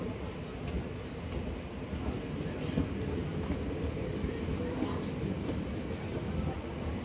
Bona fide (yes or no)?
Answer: yes